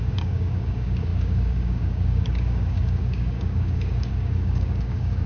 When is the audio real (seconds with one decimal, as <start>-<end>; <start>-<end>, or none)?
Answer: none